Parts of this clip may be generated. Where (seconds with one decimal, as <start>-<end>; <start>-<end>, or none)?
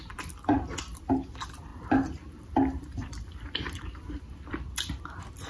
0.0-5.5